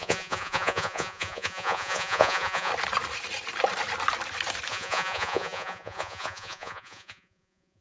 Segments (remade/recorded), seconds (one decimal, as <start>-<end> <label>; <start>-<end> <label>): 0.0-2.7 remade; 2.7-4.7 recorded; 4.7-7.8 remade